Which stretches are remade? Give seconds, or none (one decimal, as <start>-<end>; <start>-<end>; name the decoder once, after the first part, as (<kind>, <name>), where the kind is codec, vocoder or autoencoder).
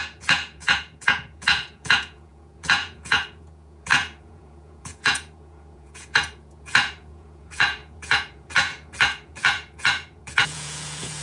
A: 0.0-11.2 (vocoder, Vocos)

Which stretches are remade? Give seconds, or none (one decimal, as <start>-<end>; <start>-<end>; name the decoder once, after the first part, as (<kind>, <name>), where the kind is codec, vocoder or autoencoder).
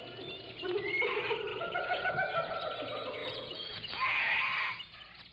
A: 1.5-2.1 (vocoder, Vocos); 3.2-4.3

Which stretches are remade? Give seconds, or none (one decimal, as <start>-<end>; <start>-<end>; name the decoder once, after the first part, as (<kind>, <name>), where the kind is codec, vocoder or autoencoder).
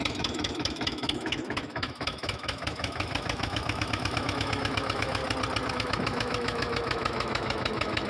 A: 0.0-5.2 (autoencoder, DAC-VAE); 5.7-8.1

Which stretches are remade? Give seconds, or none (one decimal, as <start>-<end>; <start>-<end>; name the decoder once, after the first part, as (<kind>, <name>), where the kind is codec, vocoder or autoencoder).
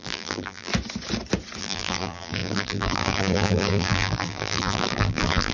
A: 0.0-0.7 (vocoder, BigVGAN v2); 1.6-5.5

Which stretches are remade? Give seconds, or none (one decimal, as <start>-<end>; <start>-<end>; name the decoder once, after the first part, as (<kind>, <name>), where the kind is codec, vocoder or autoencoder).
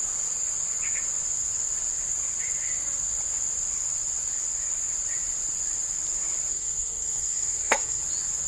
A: 6.5-8.0 (codec, SNAC)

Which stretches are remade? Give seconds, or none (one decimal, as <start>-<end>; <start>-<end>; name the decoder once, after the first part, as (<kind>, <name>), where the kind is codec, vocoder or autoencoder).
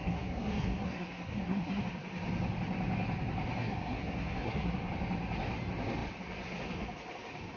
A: 0.0-1.8 (codec, SNAC); 3.6-4.9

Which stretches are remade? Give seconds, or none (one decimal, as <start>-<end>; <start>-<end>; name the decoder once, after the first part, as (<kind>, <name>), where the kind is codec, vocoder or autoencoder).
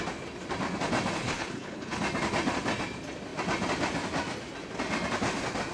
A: 1.2-2.0 (codec, HILCodec)